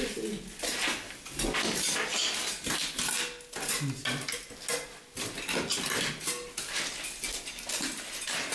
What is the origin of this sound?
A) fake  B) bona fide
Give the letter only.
B